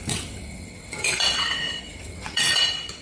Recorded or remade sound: remade